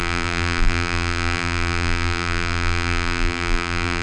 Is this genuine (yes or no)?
no